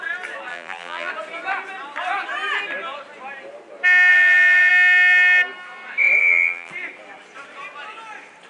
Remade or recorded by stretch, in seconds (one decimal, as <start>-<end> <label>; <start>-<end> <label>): 0.0-0.5 recorded; 0.5-1.1 remade; 1.1-4.1 recorded; 4.1-4.7 remade; 4.7-6.2 recorded; 6.2-6.7 remade; 6.7-8.5 recorded